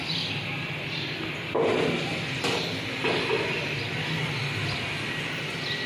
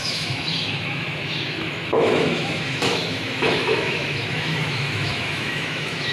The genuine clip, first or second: first